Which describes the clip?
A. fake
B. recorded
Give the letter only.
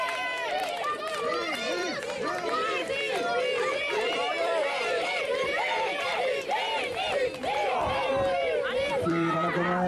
A